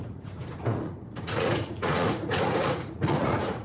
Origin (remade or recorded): remade